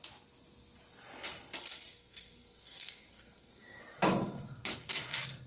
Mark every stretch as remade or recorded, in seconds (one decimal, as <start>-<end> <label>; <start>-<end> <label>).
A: 0.0-1.9 recorded; 1.9-3.8 remade; 3.8-5.5 recorded